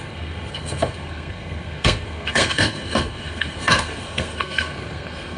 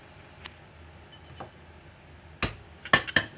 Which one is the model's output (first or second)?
first